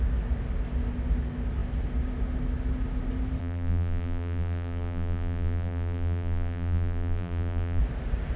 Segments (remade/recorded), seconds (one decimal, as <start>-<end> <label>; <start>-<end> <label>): 0.0-3.4 recorded; 3.4-7.8 remade; 7.8-8.4 recorded